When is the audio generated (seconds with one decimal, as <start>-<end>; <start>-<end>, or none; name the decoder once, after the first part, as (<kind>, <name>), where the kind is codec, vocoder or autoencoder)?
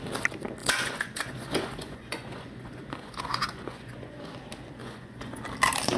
0.6-4.2 (vocoder, Vocos); 4.8-5.4